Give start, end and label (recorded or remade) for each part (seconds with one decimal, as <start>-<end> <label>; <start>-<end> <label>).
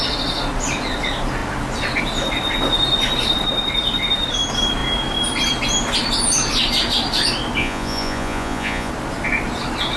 0.0-7.6 recorded; 7.6-8.9 remade; 8.9-10.0 recorded